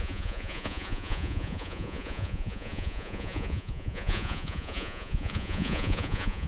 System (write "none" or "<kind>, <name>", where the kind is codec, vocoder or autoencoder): vocoder, Vocos